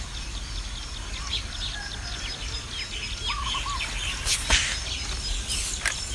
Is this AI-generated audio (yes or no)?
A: no